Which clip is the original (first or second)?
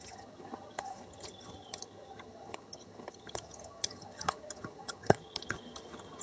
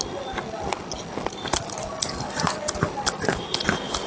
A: second